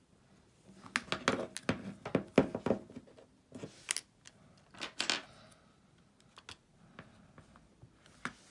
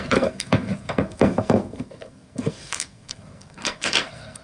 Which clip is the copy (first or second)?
second